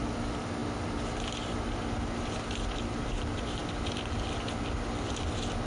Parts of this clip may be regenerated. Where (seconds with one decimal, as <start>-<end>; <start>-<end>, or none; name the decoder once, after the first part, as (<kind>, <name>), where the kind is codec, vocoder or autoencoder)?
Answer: none